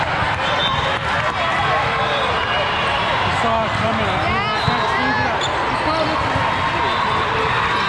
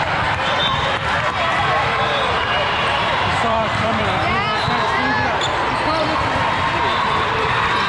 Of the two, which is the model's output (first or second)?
second